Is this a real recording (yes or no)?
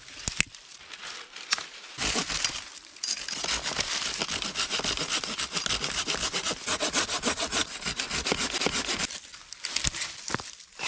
yes